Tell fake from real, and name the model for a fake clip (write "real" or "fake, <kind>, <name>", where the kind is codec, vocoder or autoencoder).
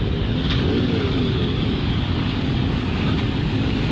fake, codec, DAC